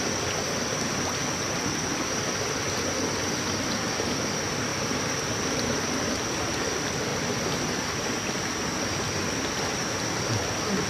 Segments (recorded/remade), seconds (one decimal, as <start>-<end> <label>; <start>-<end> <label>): 0.0-4.7 recorded; 4.7-6.1 remade; 6.1-7.1 recorded; 7.1-7.8 remade; 7.8-10.9 recorded